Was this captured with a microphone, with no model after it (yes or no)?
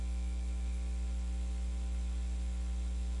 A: yes